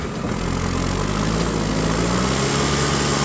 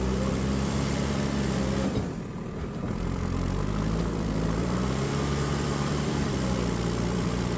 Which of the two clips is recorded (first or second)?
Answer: first